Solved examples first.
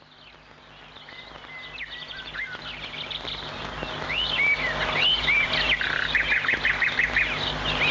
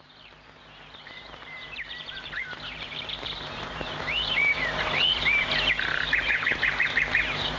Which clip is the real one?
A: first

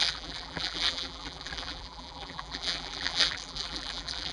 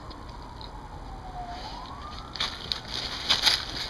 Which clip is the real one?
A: second